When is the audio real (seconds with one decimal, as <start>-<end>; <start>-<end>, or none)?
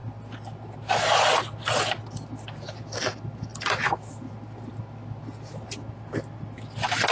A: 0.0-3.5; 4.3-7.1